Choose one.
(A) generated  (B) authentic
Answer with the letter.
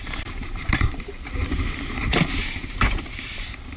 A